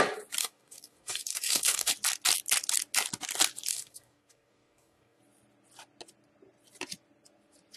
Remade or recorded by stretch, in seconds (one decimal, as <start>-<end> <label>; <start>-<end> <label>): 0.0-0.4 recorded; 0.4-1.9 remade; 1.9-3.7 recorded; 3.7-5.2 remade; 5.2-7.8 recorded